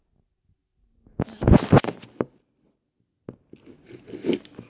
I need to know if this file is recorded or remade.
recorded